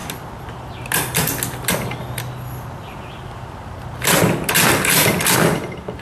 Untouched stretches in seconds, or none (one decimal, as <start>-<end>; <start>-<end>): 0.0-6.0

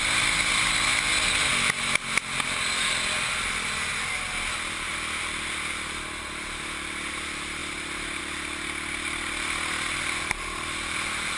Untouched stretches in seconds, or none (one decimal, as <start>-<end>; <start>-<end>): 0.0-7.6; 8.2-11.4

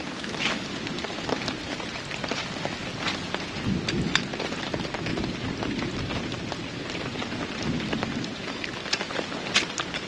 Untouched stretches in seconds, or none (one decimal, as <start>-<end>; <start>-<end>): 0.0-1.0; 2.0-5.1; 9.6-10.1

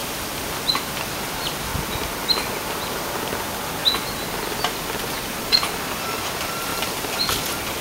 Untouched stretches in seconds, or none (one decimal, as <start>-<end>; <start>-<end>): 0.0-1.1; 1.7-6.1; 6.7-7.8

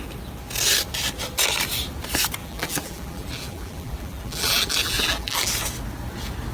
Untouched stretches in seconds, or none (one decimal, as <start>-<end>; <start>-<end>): 0.0-2.4; 5.5-6.5

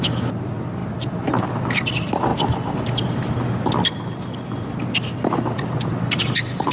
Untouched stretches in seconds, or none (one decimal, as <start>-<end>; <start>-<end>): 0.0-6.7

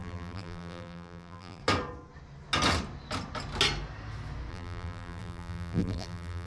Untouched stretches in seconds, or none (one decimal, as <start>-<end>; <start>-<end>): 1.6-4.5